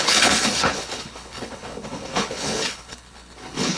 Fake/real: fake